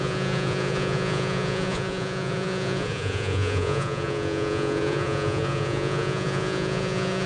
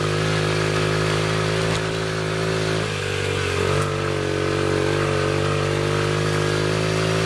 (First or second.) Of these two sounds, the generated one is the first